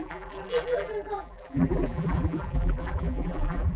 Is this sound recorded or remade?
remade